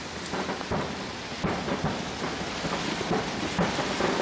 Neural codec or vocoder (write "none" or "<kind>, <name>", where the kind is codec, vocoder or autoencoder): none